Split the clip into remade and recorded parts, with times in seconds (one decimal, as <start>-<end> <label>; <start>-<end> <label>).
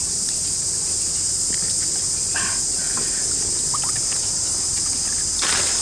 0.0-5.8 recorded